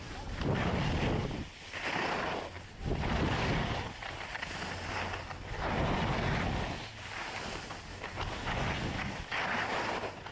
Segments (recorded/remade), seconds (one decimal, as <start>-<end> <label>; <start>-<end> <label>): 0.0-8.4 recorded; 8.4-9.1 remade; 9.1-10.3 recorded